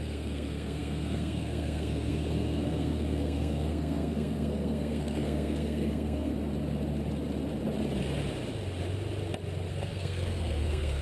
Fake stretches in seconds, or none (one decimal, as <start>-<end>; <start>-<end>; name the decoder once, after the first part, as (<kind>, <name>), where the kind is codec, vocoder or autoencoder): 0.0-6.3 (codec, SNAC); 9.7-11.0